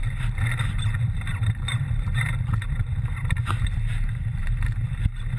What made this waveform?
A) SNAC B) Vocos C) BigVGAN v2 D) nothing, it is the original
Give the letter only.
C